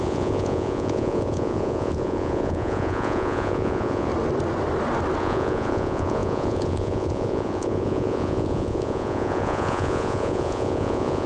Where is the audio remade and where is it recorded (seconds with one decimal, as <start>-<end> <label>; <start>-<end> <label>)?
0.0-4.1 remade; 4.1-5.2 recorded; 5.2-11.3 remade